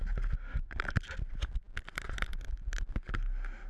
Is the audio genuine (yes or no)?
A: yes